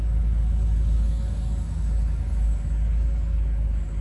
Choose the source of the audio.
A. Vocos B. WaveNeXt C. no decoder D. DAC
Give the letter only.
D